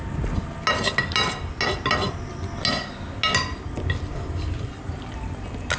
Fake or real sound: real